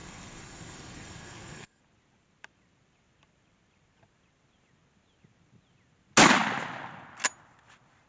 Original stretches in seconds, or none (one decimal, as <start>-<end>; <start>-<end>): 1.8-8.1